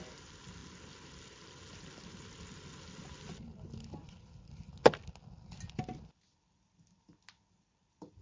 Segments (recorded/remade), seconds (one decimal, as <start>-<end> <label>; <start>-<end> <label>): 0.0-8.2 recorded